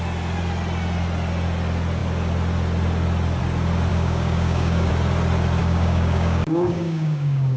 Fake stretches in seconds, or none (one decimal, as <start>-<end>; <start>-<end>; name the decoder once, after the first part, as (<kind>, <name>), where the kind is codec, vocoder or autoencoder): 3.9-4.9 (codec, DAC); 5.6-7.6